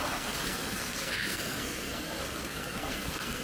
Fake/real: fake